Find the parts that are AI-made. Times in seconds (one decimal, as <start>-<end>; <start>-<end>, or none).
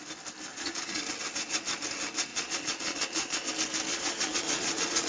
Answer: 0.5-1.0; 2.3-3.5; 3.9-5.1